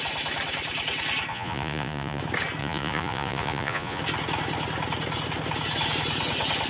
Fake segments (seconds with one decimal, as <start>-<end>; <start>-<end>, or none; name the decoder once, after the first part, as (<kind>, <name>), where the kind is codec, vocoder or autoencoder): 1.3-2.2 (vocoder, Vocos); 2.6-4.0